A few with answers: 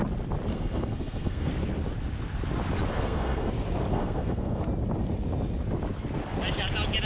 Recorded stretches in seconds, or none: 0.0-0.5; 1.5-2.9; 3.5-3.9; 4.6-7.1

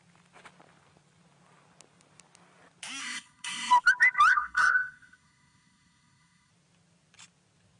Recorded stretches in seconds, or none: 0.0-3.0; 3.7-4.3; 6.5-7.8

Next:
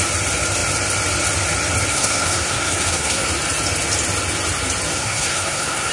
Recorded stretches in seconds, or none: 0.0-1.9; 3.3-4.9